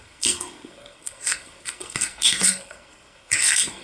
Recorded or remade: remade